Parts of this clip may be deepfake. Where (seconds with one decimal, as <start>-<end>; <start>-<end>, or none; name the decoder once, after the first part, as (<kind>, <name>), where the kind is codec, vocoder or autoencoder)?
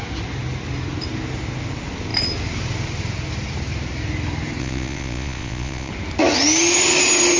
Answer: 4.6-5.9 (vocoder, Vocos)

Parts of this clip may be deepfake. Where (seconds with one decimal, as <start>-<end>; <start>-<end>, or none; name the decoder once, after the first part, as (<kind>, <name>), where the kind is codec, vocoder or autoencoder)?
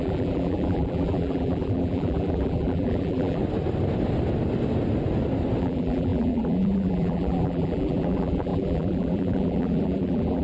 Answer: 0.0-3.4 (vocoder, BigVGAN v2); 5.6-10.4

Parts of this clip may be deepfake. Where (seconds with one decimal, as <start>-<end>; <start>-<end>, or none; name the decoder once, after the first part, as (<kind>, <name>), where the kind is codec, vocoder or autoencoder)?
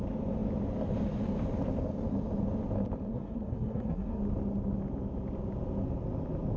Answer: 3.1-4.2 (codec, SNAC)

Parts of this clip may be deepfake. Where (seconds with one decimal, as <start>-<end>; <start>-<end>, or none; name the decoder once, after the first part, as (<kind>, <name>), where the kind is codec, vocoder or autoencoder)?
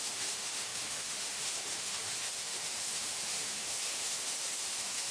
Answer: 0.0-5.1 (autoencoder, DAC-VAE)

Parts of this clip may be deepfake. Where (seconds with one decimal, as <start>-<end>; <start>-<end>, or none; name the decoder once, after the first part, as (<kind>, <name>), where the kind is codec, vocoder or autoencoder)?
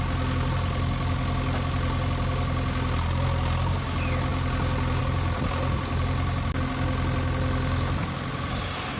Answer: none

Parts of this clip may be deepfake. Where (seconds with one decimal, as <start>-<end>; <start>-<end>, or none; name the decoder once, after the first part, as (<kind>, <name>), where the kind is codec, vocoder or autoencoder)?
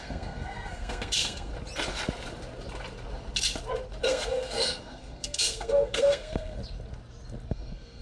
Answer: 0.0-1.5 (codec, SNAC); 4.0-6.6; 7.5-8.0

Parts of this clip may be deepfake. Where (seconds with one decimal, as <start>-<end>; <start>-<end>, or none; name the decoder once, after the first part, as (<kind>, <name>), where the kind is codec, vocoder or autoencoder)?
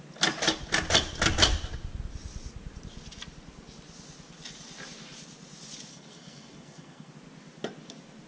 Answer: 5.9-7.1 (codec, SNAC)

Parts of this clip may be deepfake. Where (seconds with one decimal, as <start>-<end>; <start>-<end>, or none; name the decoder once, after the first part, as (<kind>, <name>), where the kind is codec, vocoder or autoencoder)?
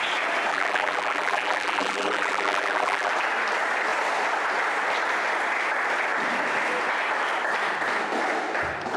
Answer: 0.5-3.1 (vocoder, BigVGAN v2)